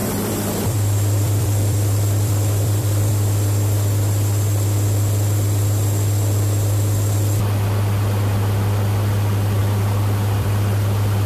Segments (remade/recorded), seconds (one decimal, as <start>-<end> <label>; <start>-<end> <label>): 0.0-3.1 remade; 3.1-9.6 recorded; 9.6-11.3 remade